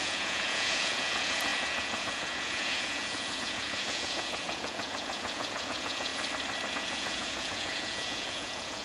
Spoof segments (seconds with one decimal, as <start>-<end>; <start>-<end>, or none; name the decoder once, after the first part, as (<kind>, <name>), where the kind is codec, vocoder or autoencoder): 0.0-6.1 (vocoder, Vocos); 6.7-8.8

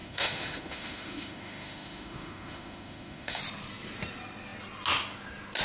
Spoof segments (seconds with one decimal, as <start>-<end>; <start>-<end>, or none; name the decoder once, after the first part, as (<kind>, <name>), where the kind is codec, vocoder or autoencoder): 0.0-3.4 (autoencoder, DAC-VAE)

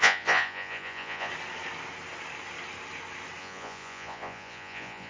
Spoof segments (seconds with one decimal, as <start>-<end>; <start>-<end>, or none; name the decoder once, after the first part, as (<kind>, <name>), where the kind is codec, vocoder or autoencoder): 0.0-1.3 (vocoder, Vocos); 3.4-5.1